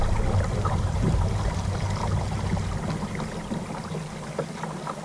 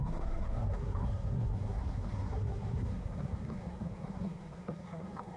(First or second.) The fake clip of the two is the second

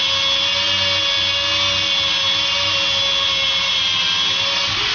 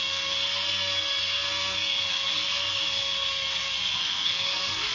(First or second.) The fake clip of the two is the second